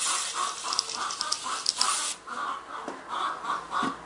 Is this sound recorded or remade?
recorded